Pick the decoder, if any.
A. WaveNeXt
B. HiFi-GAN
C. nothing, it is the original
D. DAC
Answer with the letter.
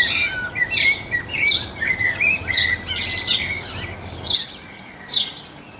C